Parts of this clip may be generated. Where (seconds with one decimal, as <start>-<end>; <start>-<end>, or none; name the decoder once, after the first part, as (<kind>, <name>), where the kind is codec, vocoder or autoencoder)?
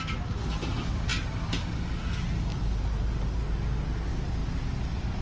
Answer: none